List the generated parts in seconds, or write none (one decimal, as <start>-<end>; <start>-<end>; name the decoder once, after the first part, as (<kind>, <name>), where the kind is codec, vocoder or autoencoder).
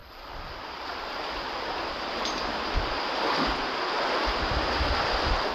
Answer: 0.0-1.2 (vocoder, BigVGAN v2)